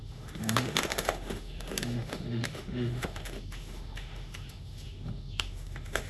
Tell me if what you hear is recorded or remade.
remade